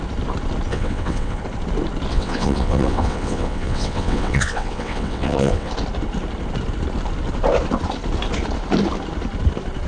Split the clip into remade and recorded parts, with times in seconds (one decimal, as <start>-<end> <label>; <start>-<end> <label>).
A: 0.0-0.7 recorded; 0.7-1.4 remade; 1.4-2.1 recorded; 2.1-5.7 remade; 5.7-9.9 recorded

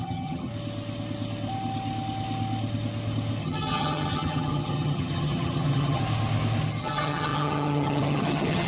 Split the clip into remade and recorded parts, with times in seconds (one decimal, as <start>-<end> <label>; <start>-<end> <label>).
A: 0.0-0.5 remade; 0.5-3.4 recorded; 3.4-6.0 remade; 6.0-6.8 recorded; 6.8-8.7 remade

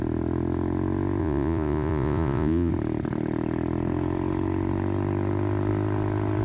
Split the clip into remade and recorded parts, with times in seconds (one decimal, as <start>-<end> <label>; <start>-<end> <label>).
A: 0.0-1.2 recorded; 1.2-2.7 remade; 2.7-6.4 recorded

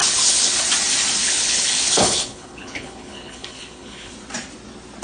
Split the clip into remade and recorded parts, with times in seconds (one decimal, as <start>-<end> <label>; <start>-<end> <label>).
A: 0.0-0.6 remade; 0.6-1.2 recorded; 1.2-4.1 remade; 4.1-5.0 recorded

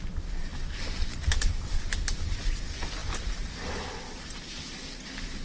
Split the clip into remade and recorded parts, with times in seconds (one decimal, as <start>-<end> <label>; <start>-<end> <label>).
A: 0.0-5.4 recorded